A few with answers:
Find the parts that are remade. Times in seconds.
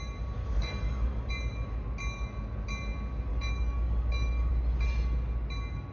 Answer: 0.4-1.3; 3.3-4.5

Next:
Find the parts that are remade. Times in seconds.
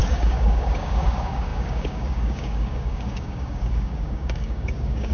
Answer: 0.0-5.1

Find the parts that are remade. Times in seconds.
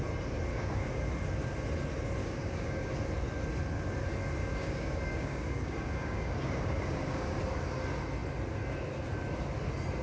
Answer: 0.5-1.1; 2.2-2.9; 4.4-7.4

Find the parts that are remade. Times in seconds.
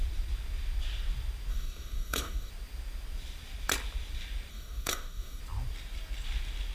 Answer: 1.5-2.5; 4.5-5.4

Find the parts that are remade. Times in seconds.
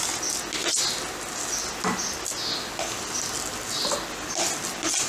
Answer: none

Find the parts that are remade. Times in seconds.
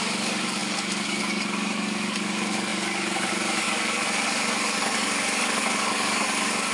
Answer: 0.0-6.7